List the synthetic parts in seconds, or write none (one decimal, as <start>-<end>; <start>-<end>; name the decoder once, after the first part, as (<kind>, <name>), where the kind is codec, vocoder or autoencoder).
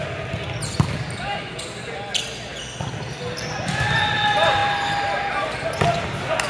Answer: none